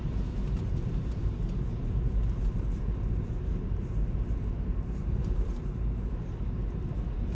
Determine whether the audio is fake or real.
fake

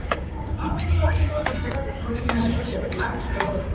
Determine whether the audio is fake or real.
fake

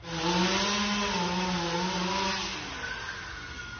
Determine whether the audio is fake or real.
real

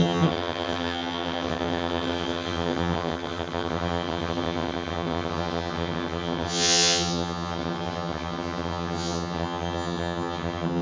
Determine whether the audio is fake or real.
fake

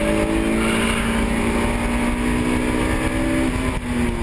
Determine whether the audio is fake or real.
real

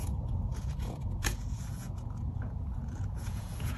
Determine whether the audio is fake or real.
fake